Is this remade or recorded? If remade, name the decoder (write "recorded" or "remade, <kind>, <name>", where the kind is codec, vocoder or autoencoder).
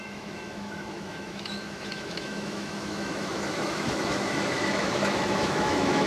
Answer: remade, autoencoder, DAC-VAE